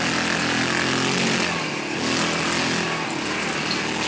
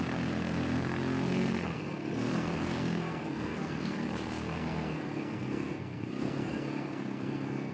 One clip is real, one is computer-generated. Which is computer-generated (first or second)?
second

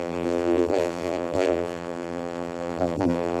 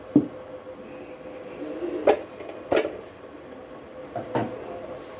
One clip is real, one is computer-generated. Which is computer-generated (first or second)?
first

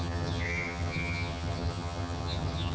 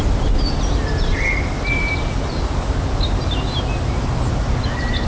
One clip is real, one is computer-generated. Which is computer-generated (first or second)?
first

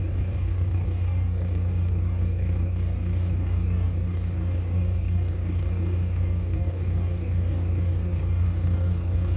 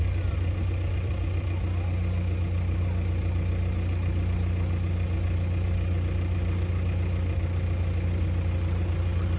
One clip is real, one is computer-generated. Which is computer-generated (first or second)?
first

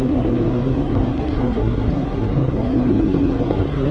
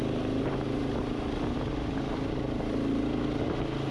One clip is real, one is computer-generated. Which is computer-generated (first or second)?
first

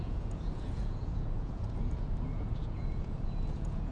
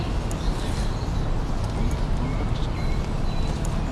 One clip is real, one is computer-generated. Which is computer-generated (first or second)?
first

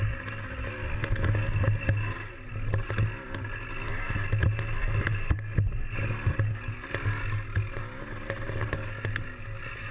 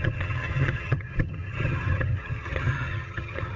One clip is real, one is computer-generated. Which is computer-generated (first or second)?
second